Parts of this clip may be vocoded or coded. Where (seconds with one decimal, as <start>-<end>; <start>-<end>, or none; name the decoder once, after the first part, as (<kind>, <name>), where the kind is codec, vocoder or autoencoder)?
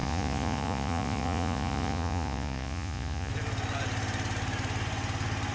0.0-3.3 (vocoder, Vocos)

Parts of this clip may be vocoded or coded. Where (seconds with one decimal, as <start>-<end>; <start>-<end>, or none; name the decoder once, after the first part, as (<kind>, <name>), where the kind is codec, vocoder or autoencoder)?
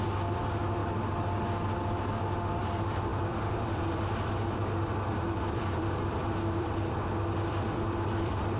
0.0-0.8 (vocoder, BigVGAN v2); 2.5-8.6